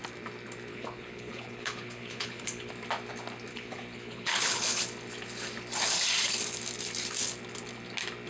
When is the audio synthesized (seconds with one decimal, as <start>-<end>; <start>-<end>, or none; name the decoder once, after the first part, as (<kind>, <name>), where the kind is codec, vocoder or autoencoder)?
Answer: 0.7-2.7 (codec, HILCodec); 3.5-4.8